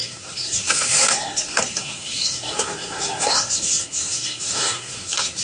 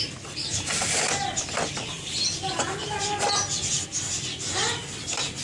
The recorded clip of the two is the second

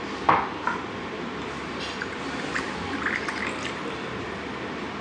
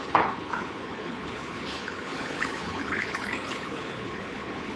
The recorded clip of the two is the first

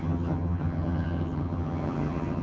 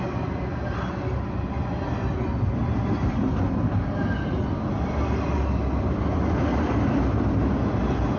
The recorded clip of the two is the second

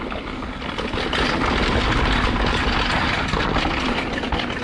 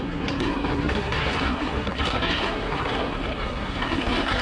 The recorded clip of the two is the first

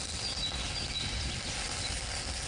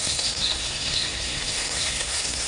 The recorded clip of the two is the first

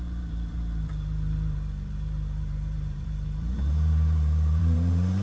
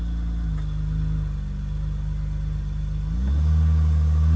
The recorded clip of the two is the second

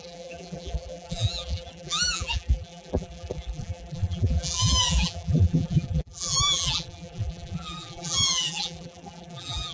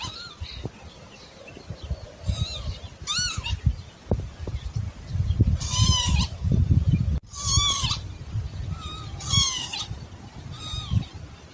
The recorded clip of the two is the second